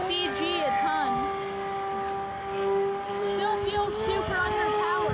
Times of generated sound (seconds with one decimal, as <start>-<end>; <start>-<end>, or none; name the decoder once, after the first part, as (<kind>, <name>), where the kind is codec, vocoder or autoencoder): 3.1-5.1 (vocoder, BigVGAN v2)